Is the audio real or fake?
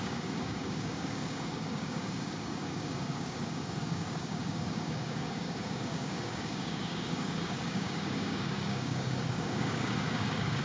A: fake